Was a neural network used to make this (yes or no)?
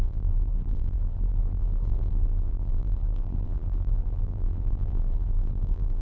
yes